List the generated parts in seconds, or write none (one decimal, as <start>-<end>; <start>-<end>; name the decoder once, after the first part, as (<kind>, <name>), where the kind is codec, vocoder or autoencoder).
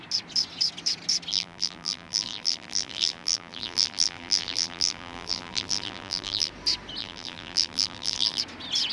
1.3-6.5 (vocoder, BigVGAN v2); 7.0-8.4